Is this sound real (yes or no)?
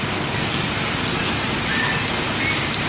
yes